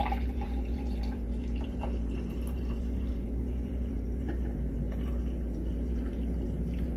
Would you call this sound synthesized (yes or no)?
yes